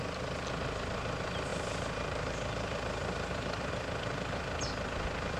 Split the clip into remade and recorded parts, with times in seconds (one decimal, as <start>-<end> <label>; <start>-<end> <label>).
0.0-1.5 recorded; 1.5-3.7 remade; 3.7-5.4 recorded